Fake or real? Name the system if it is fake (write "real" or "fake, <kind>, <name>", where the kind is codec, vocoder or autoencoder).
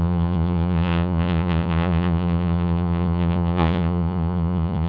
fake, vocoder, Vocos